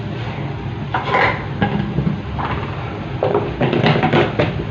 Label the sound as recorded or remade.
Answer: recorded